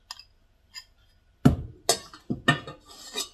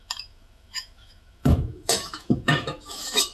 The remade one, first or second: second